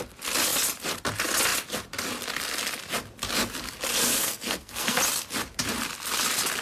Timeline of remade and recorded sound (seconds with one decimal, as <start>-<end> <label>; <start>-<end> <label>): 0.0-4.0 recorded; 4.0-5.0 remade; 5.0-6.6 recorded